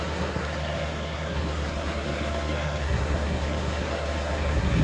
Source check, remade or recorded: remade